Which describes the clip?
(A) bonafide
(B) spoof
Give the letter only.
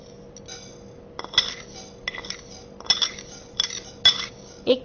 A